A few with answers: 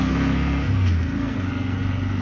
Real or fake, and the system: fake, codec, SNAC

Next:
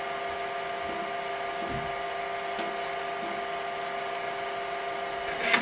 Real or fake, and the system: real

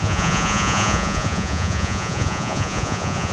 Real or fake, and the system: fake, vocoder, Vocos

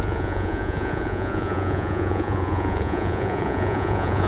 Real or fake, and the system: fake, vocoder, Vocos